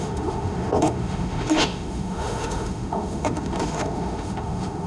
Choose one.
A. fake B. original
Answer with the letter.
A